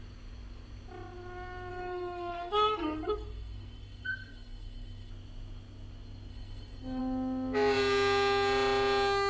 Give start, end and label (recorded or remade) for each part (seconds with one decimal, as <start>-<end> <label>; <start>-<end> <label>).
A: 0.0-1.7 recorded; 1.7-5.1 remade; 5.1-6.3 recorded; 6.3-7.0 remade; 7.0-9.3 recorded